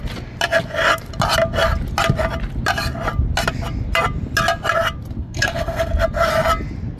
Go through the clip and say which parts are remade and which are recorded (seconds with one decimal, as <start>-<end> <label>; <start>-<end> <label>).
0.0-5.2 recorded; 5.2-5.9 remade; 5.9-7.0 recorded